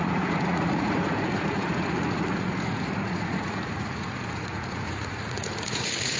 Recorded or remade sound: remade